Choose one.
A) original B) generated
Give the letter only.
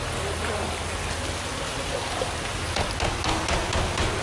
A